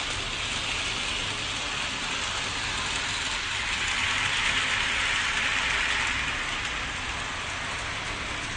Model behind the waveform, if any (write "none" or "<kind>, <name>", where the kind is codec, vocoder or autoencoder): none